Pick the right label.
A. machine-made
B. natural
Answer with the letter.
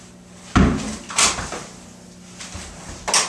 B